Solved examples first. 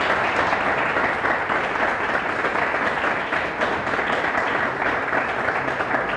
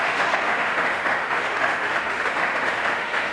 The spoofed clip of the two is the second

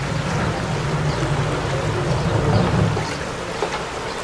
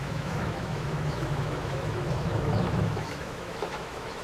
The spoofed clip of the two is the second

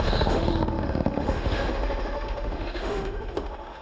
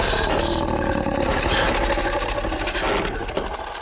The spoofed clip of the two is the first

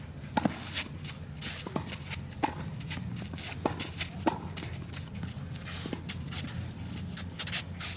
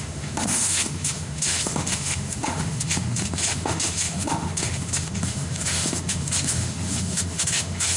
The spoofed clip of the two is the second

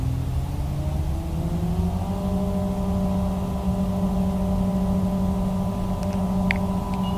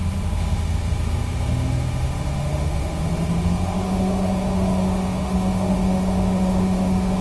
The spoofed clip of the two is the second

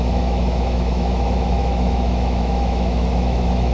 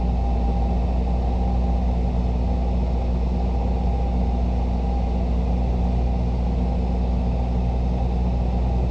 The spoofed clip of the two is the first